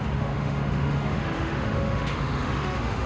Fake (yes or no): yes